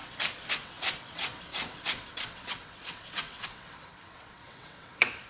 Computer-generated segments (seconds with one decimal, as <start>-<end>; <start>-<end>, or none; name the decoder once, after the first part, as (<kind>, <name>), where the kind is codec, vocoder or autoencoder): 0.5-5.3 (vocoder, WaveNeXt)